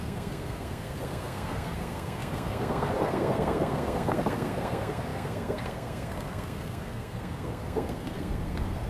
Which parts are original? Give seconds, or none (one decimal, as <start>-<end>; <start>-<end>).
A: none